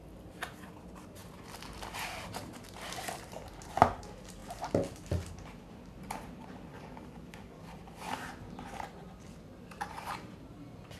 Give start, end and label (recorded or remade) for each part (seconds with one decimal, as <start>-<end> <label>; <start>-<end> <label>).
0.0-6.7 recorded; 6.7-7.7 remade; 7.7-11.0 recorded